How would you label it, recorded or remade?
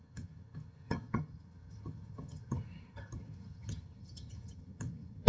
remade